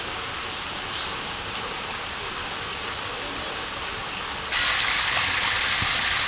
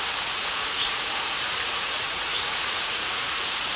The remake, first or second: second